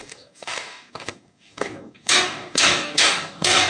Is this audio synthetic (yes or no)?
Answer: yes